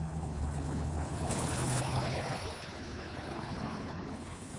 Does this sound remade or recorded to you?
remade